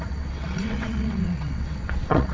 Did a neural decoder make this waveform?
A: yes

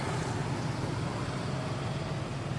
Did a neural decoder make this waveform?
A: no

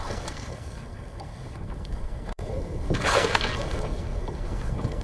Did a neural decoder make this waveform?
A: yes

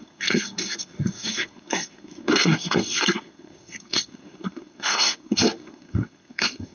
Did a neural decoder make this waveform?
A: yes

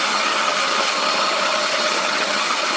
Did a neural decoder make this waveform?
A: yes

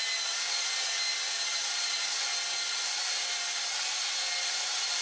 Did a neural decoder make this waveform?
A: no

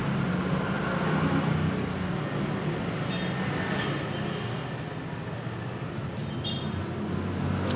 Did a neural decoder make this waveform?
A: no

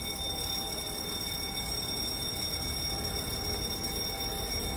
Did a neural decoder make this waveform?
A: no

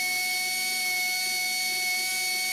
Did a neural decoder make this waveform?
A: no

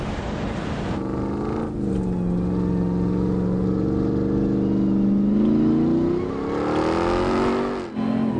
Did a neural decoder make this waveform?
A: no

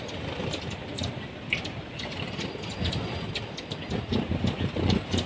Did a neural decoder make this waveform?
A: no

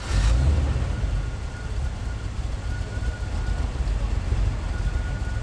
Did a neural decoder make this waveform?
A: no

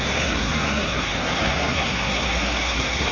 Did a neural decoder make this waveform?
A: yes